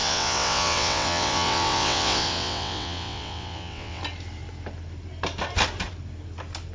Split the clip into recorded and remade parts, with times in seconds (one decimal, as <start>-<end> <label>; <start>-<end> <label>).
0.0-4.0 remade; 4.0-6.7 recorded